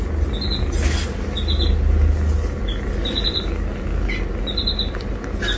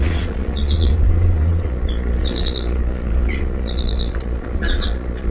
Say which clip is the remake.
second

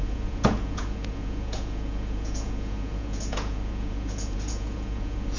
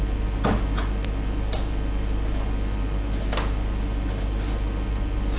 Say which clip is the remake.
first